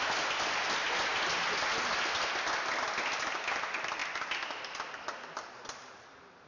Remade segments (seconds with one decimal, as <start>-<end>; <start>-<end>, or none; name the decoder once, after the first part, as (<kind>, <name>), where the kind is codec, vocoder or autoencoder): none